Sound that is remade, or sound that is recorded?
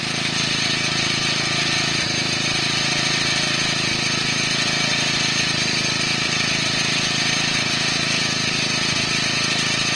remade